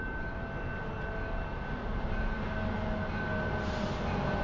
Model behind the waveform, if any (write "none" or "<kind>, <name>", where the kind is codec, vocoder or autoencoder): none